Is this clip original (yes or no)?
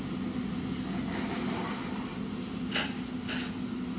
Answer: yes